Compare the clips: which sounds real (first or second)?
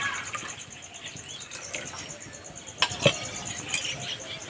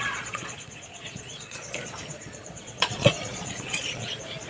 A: first